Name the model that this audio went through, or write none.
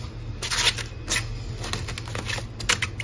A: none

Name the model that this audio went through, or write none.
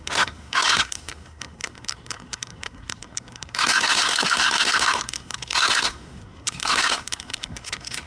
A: codec, SNAC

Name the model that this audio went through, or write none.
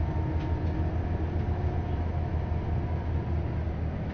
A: none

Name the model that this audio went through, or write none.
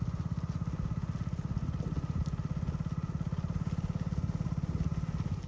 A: none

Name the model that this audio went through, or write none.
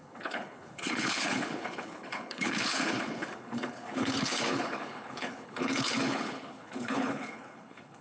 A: codec, HILCodec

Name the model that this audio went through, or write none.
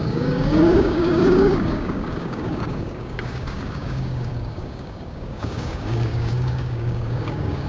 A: codec, DAC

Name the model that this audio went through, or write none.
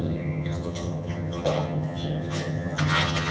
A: vocoder, HiFi-GAN